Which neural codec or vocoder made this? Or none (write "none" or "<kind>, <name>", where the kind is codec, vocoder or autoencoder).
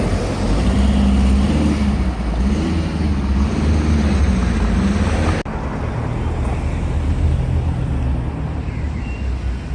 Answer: none